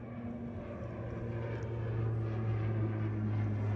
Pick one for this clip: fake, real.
real